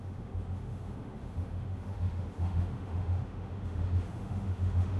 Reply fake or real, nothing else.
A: fake